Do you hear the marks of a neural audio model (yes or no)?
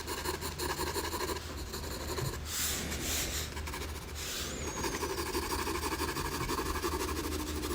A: no